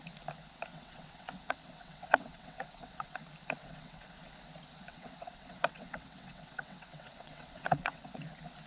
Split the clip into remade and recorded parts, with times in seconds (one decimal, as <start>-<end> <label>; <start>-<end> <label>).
0.0-0.7 recorded; 0.7-3.2 remade; 3.2-3.6 recorded; 3.6-4.3 remade; 4.3-4.9 recorded; 4.9-8.2 remade; 8.2-8.7 recorded

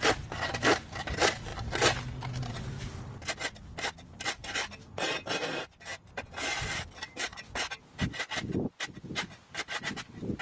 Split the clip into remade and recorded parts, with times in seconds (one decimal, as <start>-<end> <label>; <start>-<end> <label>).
0.0-10.4 recorded